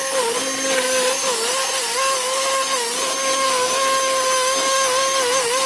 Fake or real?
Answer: real